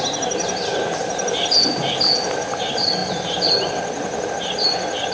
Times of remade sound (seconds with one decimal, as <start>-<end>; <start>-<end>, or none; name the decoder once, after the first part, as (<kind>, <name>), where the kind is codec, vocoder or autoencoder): none